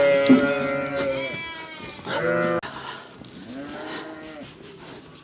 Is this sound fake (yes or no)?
no